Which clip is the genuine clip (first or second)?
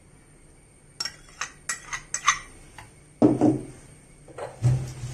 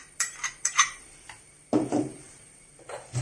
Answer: first